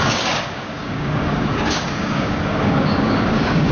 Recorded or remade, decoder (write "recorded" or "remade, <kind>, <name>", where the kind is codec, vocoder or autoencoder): remade, codec, DAC